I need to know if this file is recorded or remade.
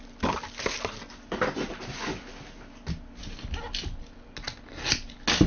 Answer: recorded